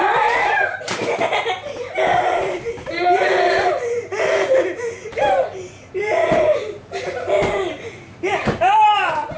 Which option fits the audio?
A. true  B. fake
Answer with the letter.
B